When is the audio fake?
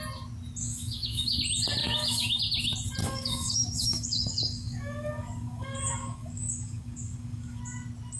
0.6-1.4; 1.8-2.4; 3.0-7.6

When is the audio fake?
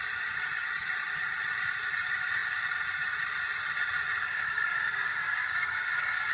4.2-6.3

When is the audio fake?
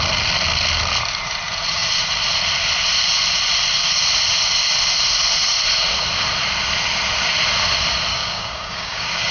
8.1-9.3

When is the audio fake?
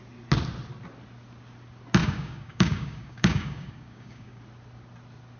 2.0-4.4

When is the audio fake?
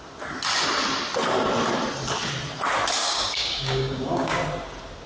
3.0-4.4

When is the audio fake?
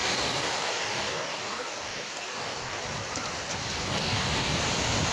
0.0-2.8; 3.8-4.6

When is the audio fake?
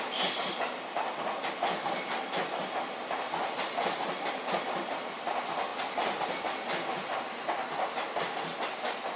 none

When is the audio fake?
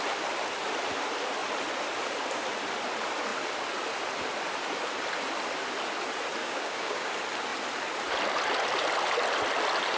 6.4-7.1